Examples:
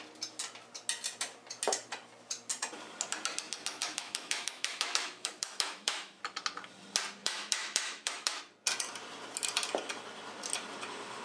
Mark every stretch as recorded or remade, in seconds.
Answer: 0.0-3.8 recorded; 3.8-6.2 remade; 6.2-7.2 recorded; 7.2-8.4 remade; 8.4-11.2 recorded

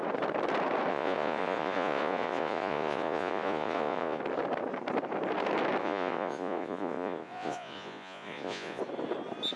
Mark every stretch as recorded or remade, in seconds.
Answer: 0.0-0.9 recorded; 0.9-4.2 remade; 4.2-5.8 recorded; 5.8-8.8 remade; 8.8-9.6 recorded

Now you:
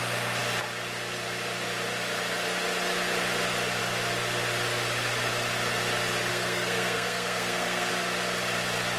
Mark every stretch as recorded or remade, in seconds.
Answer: 0.0-6.3 recorded; 6.3-7.9 remade; 7.9-9.0 recorded

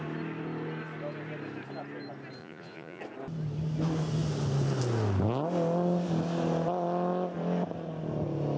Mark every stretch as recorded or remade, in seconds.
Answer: 0.0-2.4 recorded; 2.4-3.0 remade; 3.0-8.6 recorded

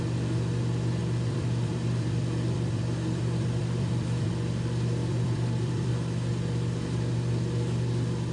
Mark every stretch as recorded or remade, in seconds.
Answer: 0.0-1.0 recorded; 1.0-4.3 remade; 4.3-5.0 recorded; 5.0-5.9 remade; 5.9-8.3 recorded

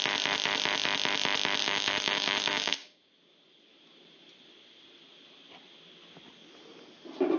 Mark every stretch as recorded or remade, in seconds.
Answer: 0.0-1.6 recorded; 1.6-3.1 remade; 3.1-7.4 recorded